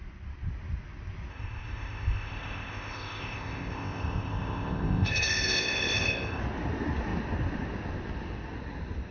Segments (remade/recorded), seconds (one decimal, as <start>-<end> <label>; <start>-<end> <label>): 0.0-1.3 recorded; 1.3-6.4 remade; 6.4-9.1 recorded